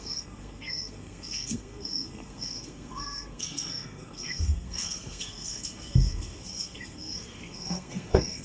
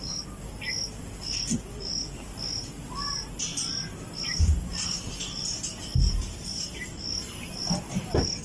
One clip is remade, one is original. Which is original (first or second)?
second